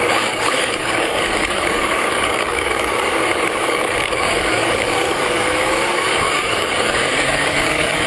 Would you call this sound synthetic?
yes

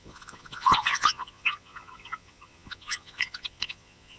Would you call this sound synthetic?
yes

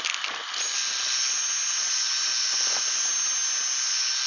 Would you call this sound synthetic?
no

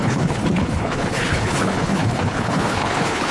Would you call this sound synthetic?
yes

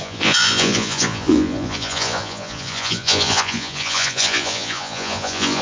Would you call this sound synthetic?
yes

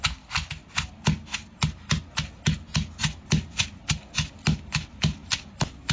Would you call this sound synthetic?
no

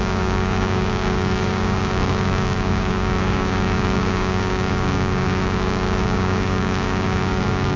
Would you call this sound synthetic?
yes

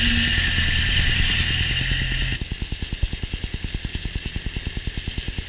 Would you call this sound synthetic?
no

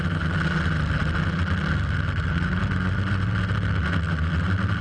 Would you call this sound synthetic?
no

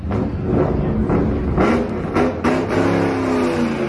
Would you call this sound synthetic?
no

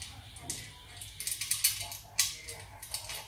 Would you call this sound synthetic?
no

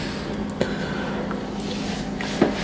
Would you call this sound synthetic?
no